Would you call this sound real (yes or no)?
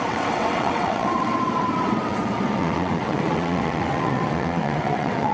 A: no